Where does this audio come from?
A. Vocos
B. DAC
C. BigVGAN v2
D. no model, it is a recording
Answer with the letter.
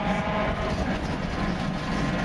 A